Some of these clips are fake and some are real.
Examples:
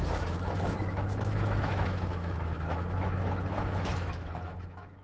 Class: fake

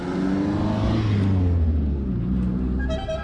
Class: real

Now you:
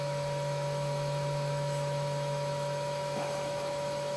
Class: fake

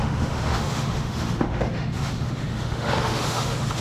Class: fake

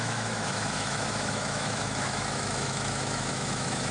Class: fake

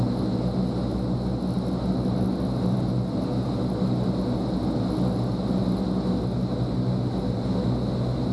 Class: real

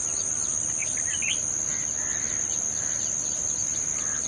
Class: real